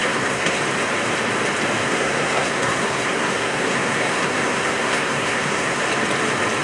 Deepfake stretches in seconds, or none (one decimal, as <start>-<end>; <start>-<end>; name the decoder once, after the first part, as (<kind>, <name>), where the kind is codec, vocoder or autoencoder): 0.0-0.6 (codec, SNAC); 1.8-5.8